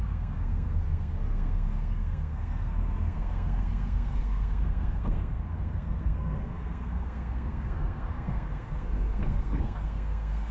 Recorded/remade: remade